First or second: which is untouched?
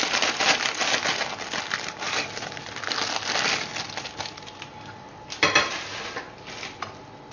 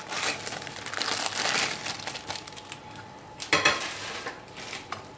first